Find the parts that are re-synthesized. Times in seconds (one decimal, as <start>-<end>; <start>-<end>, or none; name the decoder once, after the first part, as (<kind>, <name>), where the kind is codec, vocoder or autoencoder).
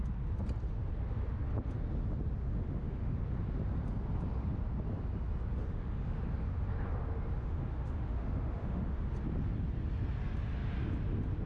2.4-3.2 (autoencoder, DAC-VAE); 5.6-6.2; 7.4-9.1